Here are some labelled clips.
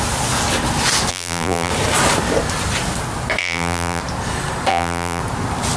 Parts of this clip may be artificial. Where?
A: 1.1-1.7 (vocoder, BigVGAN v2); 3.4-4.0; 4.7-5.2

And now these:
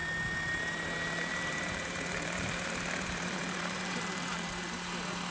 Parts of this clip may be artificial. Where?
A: 1.3-4.5 (vocoder, BigVGAN v2)